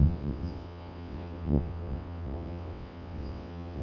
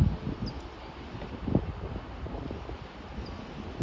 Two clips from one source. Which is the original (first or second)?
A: second